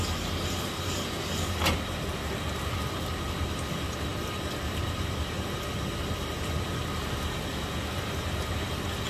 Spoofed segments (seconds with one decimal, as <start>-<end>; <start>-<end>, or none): none